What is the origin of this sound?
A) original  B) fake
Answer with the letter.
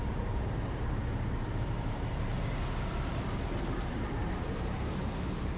B